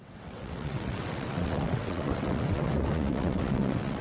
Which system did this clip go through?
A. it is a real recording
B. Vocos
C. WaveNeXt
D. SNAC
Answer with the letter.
C